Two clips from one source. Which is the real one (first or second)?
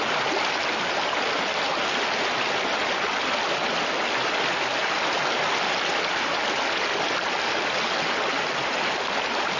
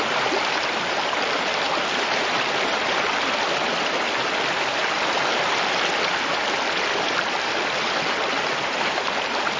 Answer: first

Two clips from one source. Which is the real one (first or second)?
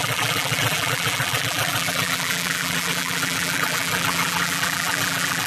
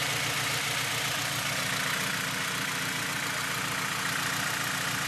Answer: second